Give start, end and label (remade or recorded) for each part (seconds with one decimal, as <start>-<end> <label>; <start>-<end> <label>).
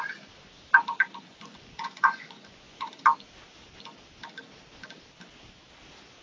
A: 0.0-1.3 recorded; 1.3-3.0 remade; 3.0-6.2 recorded